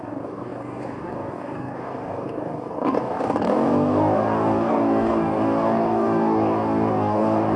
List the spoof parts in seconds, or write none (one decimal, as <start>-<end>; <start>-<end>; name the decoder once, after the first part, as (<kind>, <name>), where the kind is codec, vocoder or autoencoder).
0.0-7.6 (codec, DAC)